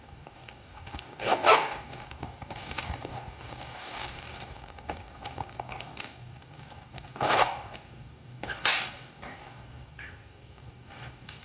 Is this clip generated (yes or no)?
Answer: yes